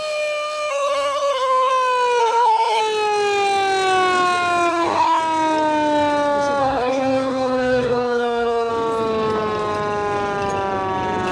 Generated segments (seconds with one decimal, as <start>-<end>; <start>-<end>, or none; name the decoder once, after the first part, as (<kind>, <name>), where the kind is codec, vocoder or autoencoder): 0.7-1.7 (codec, SNAC); 2.2-2.8; 4.7-5.2; 6.6-8.7